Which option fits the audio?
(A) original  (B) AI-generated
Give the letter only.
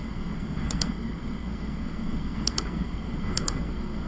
B